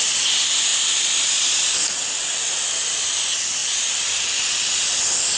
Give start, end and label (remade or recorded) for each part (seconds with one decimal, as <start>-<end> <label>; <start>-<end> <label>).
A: 0.0-5.4 recorded